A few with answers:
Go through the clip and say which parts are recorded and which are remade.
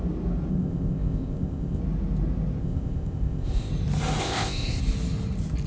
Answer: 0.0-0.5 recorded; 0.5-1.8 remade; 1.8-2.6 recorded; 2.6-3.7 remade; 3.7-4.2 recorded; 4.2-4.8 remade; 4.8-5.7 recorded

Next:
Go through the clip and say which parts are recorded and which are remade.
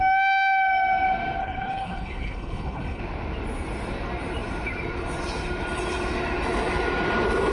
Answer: 0.0-1.4 recorded; 1.4-3.0 remade; 3.0-7.5 recorded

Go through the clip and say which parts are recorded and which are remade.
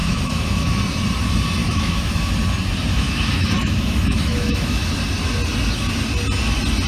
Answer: 0.0-0.8 remade; 0.8-1.6 recorded; 1.6-2.3 remade; 2.3-2.9 recorded; 2.9-4.9 remade; 4.9-6.9 recorded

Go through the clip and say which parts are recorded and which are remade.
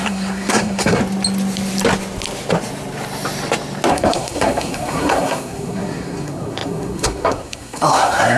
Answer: 0.0-1.0 remade; 1.0-3.9 recorded; 3.9-8.4 remade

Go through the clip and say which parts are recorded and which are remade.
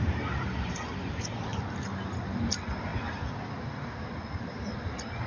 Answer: 0.0-5.3 recorded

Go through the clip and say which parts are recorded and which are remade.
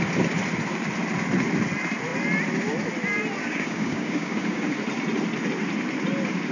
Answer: 0.0-3.4 recorded; 3.4-4.8 remade; 4.8-6.5 recorded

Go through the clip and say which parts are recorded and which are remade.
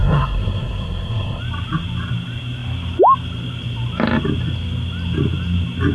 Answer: 0.0-1.4 remade; 1.4-5.9 recorded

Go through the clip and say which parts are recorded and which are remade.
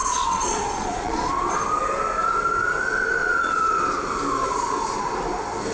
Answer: 0.0-1.3 remade; 1.3-3.2 recorded; 3.2-3.8 remade; 3.8-5.7 recorded